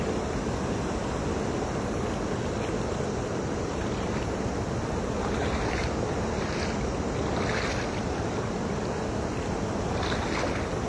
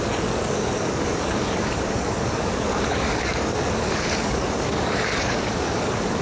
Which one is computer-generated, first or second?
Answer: second